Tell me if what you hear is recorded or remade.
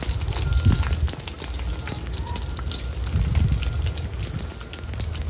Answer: recorded